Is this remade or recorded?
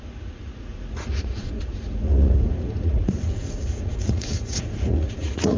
remade